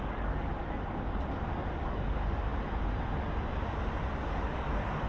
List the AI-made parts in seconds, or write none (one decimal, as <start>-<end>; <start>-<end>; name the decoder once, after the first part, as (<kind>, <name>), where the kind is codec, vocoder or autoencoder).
0.0-0.5 (codec, DAC); 1.7-2.5; 4.1-5.1